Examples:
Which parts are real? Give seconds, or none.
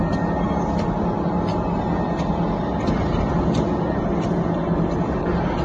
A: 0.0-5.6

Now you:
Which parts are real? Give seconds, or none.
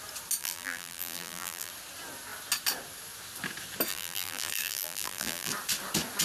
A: 0.0-0.4; 1.7-3.9; 5.5-6.2